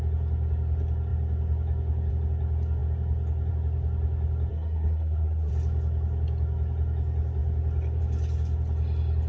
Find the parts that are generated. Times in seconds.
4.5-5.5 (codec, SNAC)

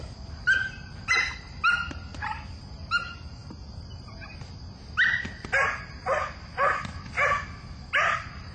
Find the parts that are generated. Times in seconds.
none

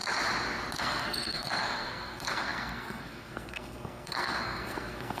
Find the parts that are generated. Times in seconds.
0.8-5.2 (codec, SNAC)

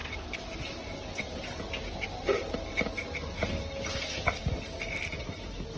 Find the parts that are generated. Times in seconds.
none

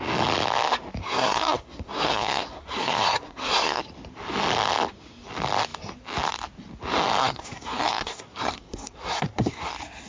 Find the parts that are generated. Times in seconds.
1.0-3.8 (codec, SNAC); 7.2-9.7